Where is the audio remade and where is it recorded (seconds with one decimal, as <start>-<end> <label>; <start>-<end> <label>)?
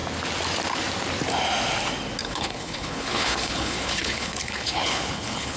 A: 0.0-2.2 recorded; 2.2-5.6 remade